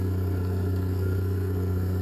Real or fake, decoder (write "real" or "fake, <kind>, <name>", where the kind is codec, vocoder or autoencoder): fake, codec, SNAC